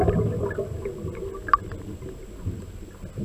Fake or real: real